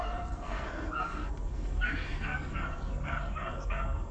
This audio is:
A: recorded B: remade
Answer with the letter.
B